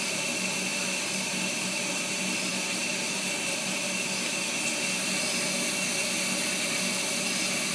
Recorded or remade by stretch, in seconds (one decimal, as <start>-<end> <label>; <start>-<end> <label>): 0.0-0.7 recorded; 0.7-1.9 remade; 1.9-2.5 recorded; 2.5-4.3 remade; 4.3-7.7 recorded